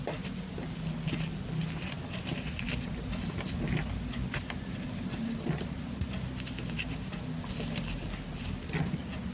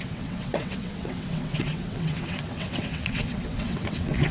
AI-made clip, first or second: second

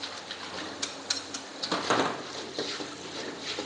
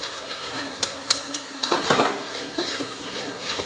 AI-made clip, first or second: second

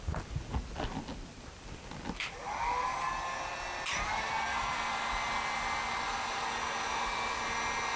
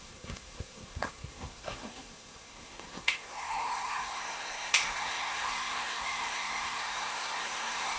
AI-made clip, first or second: second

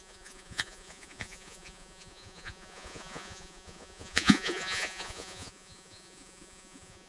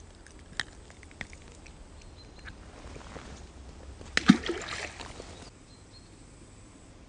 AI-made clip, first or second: first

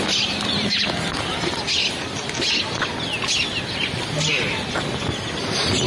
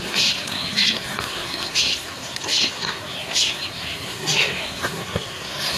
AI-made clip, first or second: second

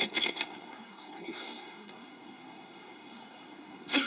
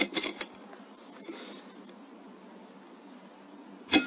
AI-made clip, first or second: first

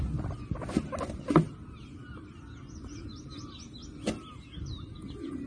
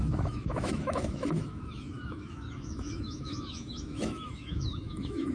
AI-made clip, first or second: second